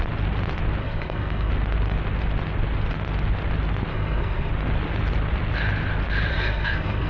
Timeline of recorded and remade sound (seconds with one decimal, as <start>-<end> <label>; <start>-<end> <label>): 0.0-0.8 recorded; 0.8-1.5 remade; 1.5-3.9 recorded; 3.9-4.5 remade; 4.5-6.3 recorded; 6.3-7.1 remade